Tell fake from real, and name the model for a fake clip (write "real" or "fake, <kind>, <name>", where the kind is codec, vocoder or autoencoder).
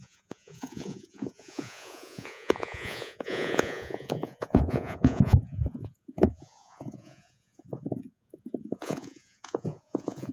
fake, vocoder, Vocos